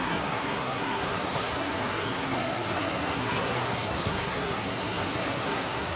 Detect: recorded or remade remade